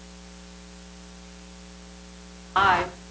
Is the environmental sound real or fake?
real